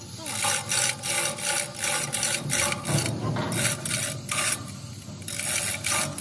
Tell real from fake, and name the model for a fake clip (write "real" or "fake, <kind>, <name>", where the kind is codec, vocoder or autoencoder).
real